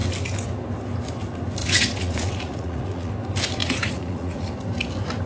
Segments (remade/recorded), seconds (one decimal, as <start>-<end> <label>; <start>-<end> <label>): 0.0-1.6 recorded; 1.6-3.1 remade; 3.1-3.6 recorded; 3.6-4.5 remade; 4.5-5.3 recorded

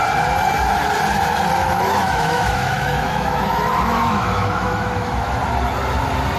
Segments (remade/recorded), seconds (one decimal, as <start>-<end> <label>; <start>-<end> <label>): 0.0-1.6 recorded; 1.6-5.4 remade; 5.4-6.4 recorded

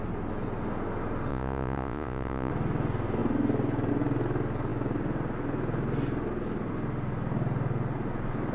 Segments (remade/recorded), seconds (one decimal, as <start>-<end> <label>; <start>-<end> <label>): 0.0-1.3 recorded; 1.3-2.5 remade; 2.5-8.5 recorded

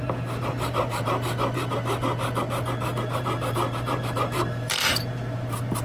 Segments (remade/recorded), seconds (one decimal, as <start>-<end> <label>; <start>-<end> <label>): 0.0-2.1 remade; 2.1-3.0 recorded; 3.0-5.8 remade

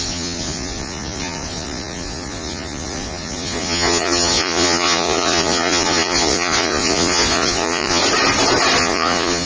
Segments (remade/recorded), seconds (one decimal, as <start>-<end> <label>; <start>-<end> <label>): 0.0-8.0 remade; 8.0-8.8 recorded; 8.8-9.5 remade

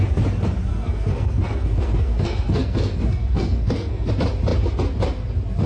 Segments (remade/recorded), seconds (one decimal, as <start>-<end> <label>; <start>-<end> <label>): 0.0-0.7 recorded; 0.7-4.1 remade; 4.1-5.7 recorded